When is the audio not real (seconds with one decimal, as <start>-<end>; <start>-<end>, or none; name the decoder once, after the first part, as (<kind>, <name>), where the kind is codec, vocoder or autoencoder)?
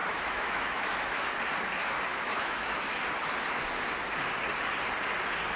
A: 0.0-1.3 (autoencoder, DAC-VAE); 2.1-3.0